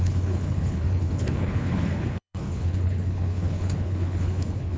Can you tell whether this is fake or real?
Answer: fake